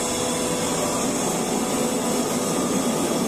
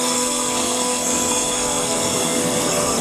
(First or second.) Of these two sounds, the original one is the first